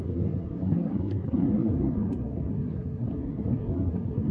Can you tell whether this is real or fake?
fake